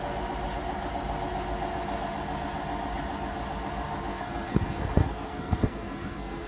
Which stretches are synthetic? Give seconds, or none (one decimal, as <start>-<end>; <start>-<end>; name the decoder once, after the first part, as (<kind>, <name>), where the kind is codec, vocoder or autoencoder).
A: 4.1-6.5 (codec, SNAC)